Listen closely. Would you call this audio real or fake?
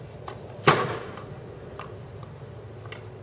real